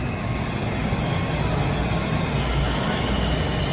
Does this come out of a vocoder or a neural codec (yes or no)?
no